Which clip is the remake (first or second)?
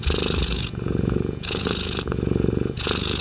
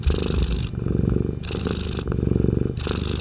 first